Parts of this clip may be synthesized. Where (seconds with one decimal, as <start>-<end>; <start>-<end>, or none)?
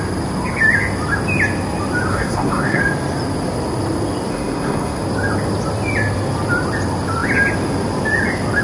2.1-2.8; 4.3-5.0